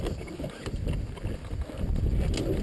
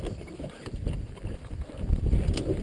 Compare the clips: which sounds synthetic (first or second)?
second